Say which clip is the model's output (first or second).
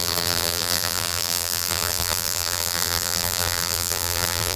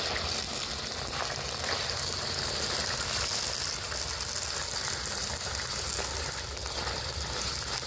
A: first